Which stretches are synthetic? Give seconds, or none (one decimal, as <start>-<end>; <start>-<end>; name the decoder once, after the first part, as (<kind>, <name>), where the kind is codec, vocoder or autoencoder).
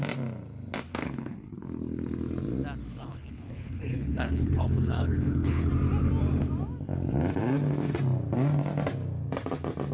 0.9-1.6 (codec, HILCodec); 2.9-5.7